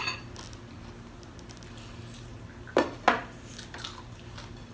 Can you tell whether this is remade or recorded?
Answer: recorded